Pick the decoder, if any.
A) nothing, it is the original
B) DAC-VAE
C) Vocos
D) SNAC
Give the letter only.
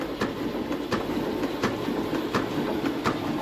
A